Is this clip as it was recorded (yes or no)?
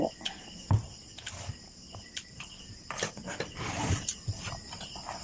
yes